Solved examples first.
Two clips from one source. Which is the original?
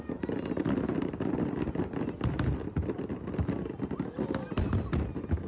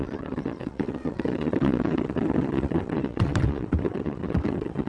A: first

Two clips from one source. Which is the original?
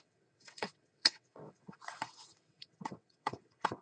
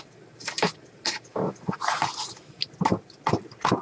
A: second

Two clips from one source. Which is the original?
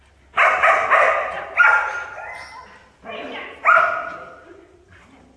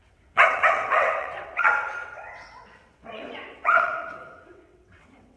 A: first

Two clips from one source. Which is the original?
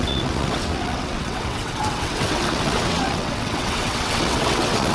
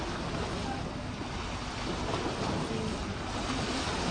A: second